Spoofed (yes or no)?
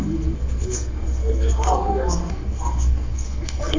yes